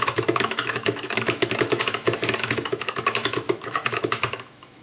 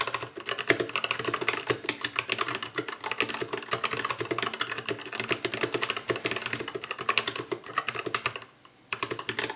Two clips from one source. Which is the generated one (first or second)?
first